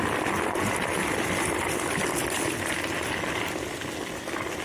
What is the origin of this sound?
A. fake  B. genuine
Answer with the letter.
B